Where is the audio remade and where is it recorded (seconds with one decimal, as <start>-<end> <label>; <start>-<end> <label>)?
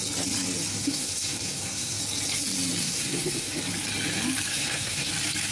0.0-0.7 recorded; 0.7-2.0 remade; 2.0-2.8 recorded; 2.8-3.6 remade; 3.6-4.5 recorded; 4.5-5.1 remade; 5.1-5.5 recorded